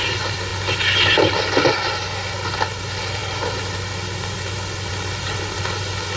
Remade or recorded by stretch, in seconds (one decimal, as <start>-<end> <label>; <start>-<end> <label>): 0.0-6.2 recorded